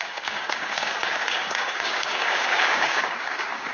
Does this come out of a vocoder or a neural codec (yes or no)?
yes